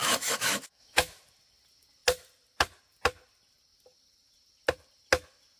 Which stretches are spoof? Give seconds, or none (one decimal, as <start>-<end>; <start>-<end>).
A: 0.0-1.2